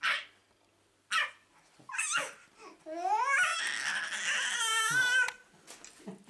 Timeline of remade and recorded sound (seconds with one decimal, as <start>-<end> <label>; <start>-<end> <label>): 0.0-6.3 recorded